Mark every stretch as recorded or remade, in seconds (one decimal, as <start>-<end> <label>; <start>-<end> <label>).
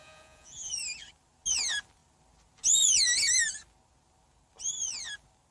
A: 0.0-0.7 remade; 0.7-5.5 recorded